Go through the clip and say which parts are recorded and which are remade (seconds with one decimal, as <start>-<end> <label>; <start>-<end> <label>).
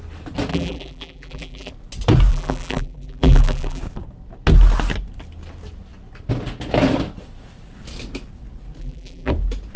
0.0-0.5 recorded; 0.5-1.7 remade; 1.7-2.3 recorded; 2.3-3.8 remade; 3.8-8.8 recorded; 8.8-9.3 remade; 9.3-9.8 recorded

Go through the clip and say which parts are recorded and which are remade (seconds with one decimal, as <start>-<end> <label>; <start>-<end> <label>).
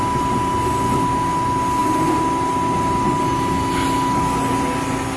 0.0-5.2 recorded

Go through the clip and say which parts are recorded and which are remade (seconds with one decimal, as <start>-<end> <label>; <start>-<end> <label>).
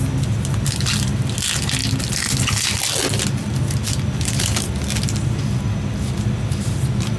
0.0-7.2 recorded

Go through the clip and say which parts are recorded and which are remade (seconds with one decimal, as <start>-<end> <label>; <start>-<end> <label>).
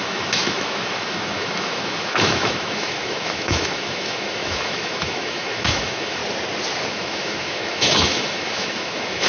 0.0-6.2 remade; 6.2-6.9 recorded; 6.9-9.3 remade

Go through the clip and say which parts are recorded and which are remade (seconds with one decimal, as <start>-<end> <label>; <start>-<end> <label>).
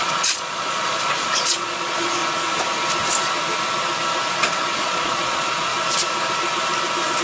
0.0-2.2 remade; 2.2-4.3 recorded; 4.3-5.7 remade; 5.7-7.2 recorded